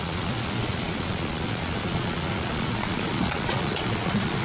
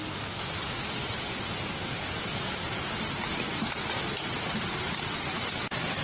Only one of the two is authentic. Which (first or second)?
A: second